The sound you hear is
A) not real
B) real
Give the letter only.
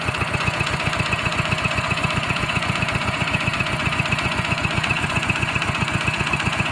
A